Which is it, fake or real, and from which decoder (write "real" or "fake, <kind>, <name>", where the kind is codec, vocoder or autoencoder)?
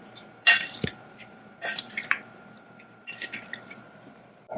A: fake, vocoder, BigVGAN v2